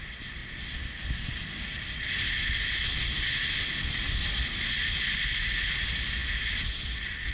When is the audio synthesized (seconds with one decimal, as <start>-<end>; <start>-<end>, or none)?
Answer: none